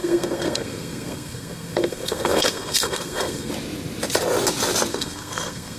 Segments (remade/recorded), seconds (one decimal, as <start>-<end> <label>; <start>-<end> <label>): 0.0-3.5 remade; 3.5-4.9 recorded; 4.9-5.8 remade